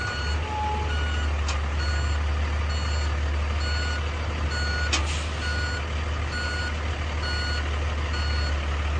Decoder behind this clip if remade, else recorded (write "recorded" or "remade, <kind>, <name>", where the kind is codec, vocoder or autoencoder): recorded